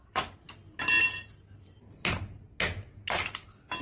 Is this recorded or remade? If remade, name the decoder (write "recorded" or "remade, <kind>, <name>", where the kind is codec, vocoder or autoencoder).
recorded